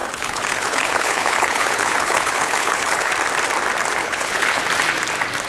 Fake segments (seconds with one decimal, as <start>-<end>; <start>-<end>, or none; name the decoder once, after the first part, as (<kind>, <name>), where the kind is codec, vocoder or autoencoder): 0.0-3.1 (codec, HILCodec); 4.0-4.6